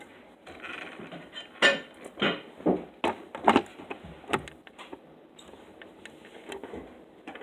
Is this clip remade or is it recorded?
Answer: recorded